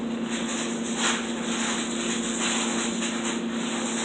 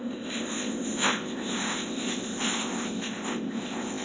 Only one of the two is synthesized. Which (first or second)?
second